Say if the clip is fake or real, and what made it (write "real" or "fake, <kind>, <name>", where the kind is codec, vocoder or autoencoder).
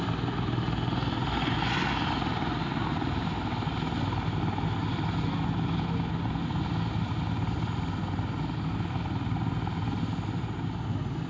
real